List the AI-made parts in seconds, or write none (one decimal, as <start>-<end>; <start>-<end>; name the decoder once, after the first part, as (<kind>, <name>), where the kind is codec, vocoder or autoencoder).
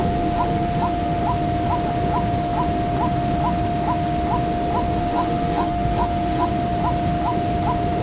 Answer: 0.0-1.2 (autoencoder, DAC-VAE); 5.0-6.5